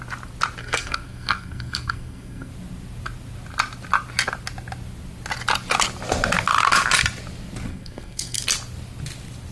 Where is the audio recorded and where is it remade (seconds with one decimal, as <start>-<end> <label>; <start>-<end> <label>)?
0.0-0.6 recorded; 0.6-2.5 remade; 2.5-7.7 recorded; 7.7-8.4 remade; 8.4-9.5 recorded

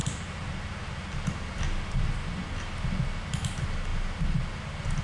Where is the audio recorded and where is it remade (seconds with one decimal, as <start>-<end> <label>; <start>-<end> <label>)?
0.0-5.0 recorded

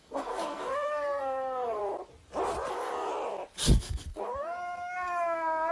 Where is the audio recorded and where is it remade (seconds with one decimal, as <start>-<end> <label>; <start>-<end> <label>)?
0.0-1.8 remade; 1.8-2.7 recorded; 2.7-3.1 remade; 3.1-3.8 recorded; 3.8-5.7 remade